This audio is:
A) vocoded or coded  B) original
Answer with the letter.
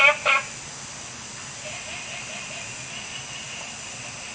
B